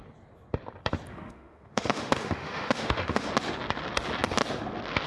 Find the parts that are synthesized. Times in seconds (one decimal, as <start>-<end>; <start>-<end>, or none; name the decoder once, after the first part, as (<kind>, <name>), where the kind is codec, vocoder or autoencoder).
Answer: 1.1-3.3 (autoencoder, DAC-VAE)